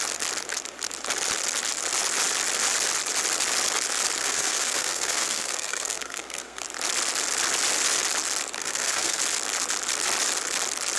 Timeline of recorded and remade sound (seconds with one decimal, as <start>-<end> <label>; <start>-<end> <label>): 0.0-4.2 recorded; 4.2-6.6 remade; 6.6-8.6 recorded; 8.6-9.2 remade; 9.2-11.0 recorded